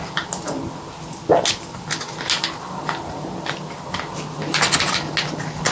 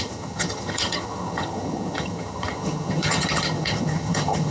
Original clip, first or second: first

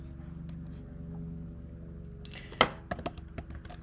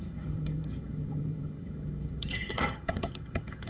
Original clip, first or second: first